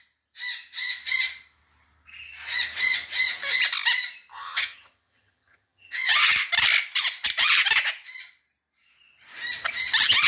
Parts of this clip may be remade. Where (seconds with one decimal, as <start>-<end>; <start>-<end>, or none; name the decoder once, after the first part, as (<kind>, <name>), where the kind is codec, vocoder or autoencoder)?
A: 4.3-6.3 (vocoder, HiFi-GAN)